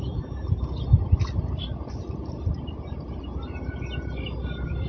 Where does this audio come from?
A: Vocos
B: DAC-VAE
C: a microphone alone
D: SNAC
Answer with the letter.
C